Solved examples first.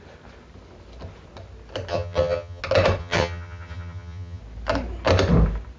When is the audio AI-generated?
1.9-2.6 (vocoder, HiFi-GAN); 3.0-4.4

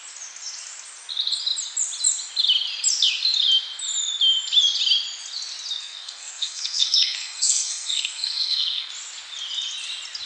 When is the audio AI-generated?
5.8-8.9 (codec, SNAC)